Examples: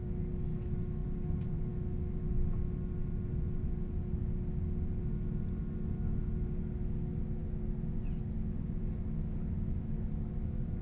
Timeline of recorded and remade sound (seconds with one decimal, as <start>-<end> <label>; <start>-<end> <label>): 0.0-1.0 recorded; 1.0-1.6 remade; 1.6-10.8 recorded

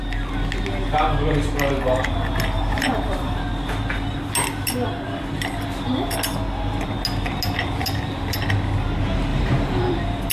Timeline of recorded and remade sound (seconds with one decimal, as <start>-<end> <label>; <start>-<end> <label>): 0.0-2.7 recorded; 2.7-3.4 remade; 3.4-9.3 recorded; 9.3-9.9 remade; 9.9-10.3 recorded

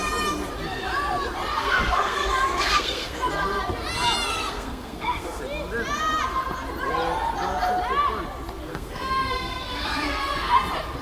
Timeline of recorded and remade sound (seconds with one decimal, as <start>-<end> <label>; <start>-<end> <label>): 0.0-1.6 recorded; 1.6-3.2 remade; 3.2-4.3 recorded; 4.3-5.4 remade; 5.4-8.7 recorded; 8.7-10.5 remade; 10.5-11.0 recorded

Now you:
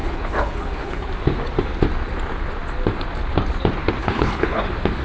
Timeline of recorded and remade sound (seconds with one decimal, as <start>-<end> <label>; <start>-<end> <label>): 0.0-1.1 remade; 1.1-4.0 recorded; 4.0-4.6 remade; 4.6-5.0 recorded

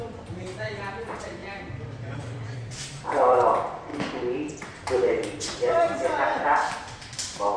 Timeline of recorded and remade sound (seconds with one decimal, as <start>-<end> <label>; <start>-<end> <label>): 0.0-7.6 remade

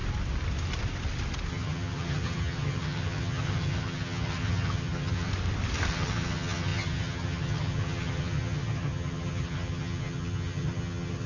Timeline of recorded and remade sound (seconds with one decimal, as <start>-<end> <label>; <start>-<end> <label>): 0.0-1.5 recorded; 1.5-5.3 remade; 5.3-5.9 recorded; 5.9-11.3 remade